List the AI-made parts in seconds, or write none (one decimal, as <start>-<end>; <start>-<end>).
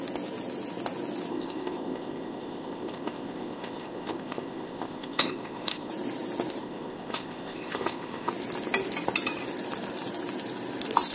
1.3-5.9; 6.6-8.3